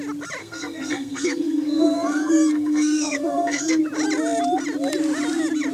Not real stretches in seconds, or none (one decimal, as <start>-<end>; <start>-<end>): 0.4-3.8